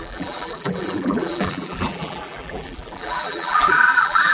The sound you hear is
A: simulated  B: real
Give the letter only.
A